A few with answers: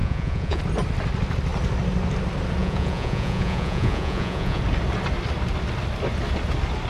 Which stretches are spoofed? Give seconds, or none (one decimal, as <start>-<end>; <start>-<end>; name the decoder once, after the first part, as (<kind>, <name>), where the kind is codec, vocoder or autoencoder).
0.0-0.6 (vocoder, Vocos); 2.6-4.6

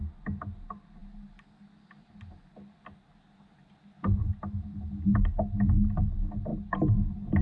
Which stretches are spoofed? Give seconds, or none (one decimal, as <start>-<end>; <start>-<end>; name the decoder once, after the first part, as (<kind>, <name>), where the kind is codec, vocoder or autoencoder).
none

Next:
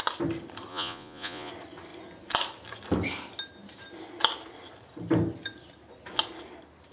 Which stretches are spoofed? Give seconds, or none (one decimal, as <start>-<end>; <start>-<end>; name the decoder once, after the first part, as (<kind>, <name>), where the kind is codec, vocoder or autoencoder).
0.7-1.5 (vocoder, Vocos)

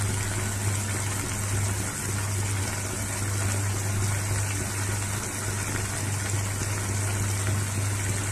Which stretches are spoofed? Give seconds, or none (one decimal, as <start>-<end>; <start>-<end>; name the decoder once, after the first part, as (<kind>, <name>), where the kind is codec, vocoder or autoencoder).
none

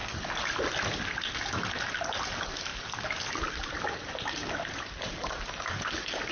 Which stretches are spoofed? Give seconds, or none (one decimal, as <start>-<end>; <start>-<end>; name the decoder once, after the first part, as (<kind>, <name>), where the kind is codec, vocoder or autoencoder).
none

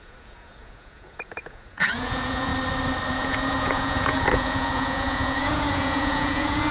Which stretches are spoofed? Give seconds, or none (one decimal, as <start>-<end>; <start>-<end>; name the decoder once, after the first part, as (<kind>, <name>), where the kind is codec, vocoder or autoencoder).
0.0-2.5 (vocoder, Vocos); 3.1-6.7